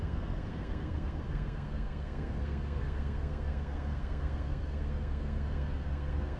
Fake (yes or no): yes